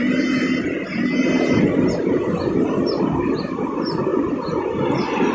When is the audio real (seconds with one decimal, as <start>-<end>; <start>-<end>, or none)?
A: 0.0-5.3

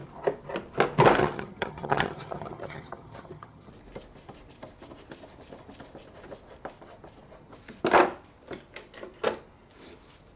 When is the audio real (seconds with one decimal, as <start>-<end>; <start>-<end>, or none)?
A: 0.0-1.2; 3.7-10.4

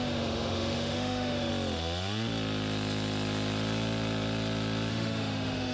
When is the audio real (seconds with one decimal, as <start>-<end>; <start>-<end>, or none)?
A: 1.5-4.9